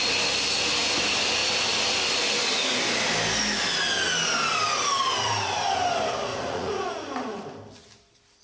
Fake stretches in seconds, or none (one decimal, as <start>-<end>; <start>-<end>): 6.3-7.4